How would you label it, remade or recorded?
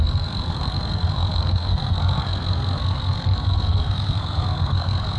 remade